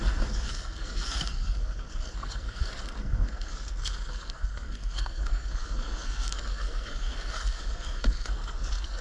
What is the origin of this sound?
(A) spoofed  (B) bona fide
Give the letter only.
A